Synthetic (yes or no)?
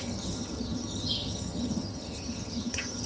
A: yes